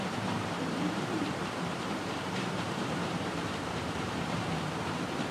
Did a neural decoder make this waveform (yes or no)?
yes